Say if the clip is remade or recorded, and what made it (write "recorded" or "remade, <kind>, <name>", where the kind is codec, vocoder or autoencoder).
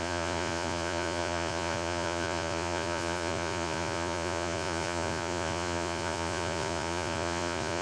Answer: remade, vocoder, Vocos